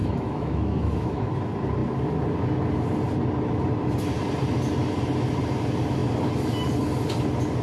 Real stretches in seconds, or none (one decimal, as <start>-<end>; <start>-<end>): 1.3-7.6